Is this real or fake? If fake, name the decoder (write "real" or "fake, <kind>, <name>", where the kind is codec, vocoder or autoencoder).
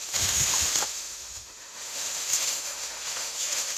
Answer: fake, autoencoder, DAC-VAE